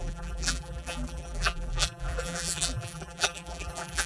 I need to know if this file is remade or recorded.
remade